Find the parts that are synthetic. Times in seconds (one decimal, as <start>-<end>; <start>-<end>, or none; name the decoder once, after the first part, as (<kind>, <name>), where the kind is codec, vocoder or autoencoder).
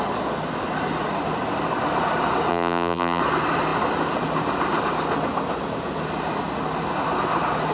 2.5-3.2 (vocoder, BigVGAN v2)